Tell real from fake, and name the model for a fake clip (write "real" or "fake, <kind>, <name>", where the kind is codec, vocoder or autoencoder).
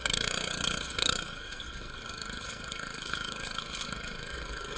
fake, codec, SNAC